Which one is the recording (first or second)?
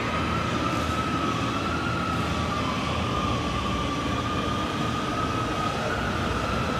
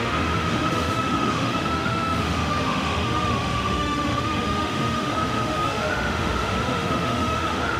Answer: first